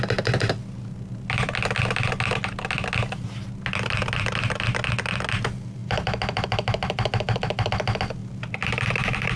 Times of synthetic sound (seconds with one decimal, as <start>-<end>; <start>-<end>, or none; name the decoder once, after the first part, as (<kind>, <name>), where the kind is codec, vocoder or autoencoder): 5.8-7.7 (vocoder, BigVGAN v2); 8.2-9.4

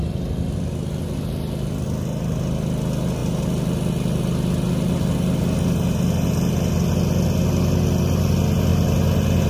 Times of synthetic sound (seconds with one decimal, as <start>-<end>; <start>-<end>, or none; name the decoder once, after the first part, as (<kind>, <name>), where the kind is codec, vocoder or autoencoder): none

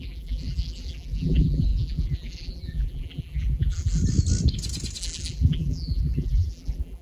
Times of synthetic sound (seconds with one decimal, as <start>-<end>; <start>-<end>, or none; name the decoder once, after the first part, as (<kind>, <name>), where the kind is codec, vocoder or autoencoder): 0.0-4.0 (vocoder, BigVGAN v2); 5.0-7.0

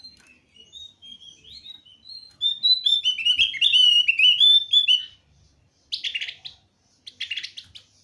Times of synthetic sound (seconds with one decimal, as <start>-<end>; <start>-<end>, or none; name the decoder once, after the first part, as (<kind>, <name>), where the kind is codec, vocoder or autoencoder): none

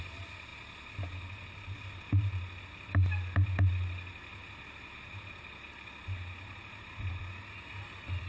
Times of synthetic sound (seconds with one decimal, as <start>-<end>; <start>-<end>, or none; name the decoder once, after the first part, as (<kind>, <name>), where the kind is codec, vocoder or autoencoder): none

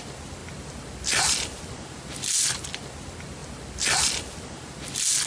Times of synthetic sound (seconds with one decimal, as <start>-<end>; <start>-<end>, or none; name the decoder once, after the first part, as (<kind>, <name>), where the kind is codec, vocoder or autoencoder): none